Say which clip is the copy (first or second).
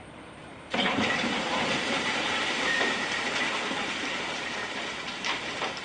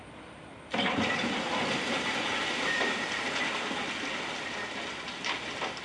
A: first